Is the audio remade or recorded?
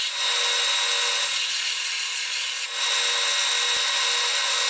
recorded